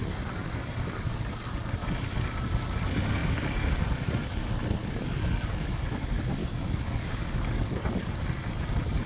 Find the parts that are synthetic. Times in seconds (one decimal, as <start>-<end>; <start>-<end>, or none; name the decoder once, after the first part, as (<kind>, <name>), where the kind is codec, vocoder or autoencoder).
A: 5.0-5.8 (codec, DAC); 6.4-8.1